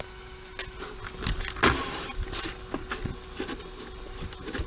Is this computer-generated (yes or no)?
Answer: no